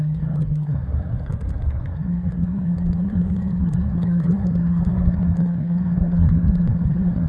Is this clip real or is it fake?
fake